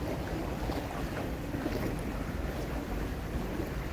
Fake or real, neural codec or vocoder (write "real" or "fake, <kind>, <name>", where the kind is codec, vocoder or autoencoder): real